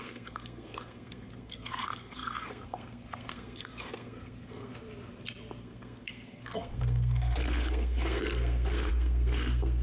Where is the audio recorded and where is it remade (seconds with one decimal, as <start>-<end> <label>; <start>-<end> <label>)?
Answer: 0.0-4.7 remade; 4.7-5.6 recorded; 5.6-9.8 remade

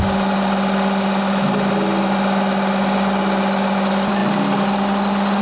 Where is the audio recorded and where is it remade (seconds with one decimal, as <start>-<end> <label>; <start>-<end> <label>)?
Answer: 0.0-5.4 recorded

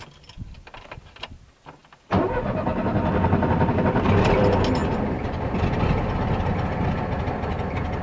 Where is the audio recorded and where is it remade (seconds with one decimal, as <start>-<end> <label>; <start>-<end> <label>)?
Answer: 0.0-8.0 recorded

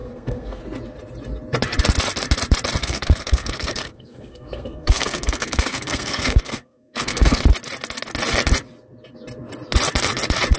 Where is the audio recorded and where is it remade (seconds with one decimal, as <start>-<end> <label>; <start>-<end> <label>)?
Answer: 0.0-0.6 remade; 0.6-2.8 recorded; 2.8-7.4 remade; 7.4-10.6 recorded

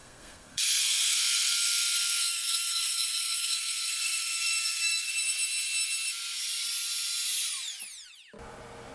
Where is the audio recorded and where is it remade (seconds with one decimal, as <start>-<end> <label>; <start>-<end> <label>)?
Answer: 0.0-5.1 remade; 5.1-8.9 recorded

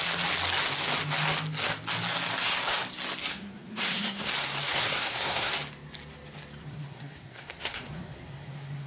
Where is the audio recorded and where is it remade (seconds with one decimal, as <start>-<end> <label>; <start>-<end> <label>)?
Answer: 0.0-3.3 recorded; 3.3-4.3 remade; 4.3-4.7 recorded; 4.7-5.5 remade; 5.5-6.6 recorded; 6.6-8.9 remade